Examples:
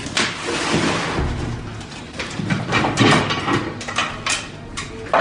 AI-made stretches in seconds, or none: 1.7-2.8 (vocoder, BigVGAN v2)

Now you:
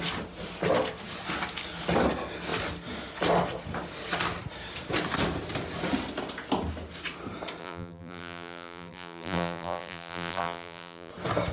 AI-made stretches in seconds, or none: 7.6-11.1 (vocoder, BigVGAN v2)

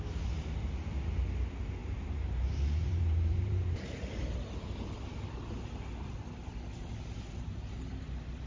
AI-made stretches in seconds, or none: 1.8-4.1 (vocoder, BigVGAN v2)

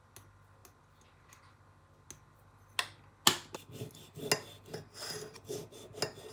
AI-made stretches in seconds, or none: none

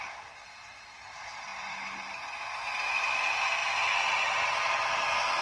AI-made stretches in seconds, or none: none

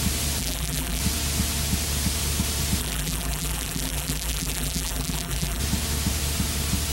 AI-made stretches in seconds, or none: 0.4-1.0 (vocoder, BigVGAN v2); 2.8-5.6